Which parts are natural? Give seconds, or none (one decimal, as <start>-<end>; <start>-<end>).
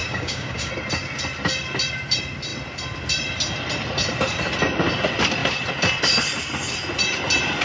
0.7-7.6